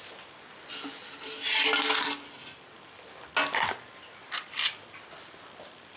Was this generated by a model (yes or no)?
no